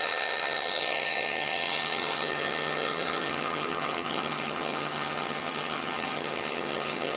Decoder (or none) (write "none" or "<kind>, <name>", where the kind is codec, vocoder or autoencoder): vocoder, HiFi-GAN